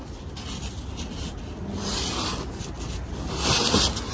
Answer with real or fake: real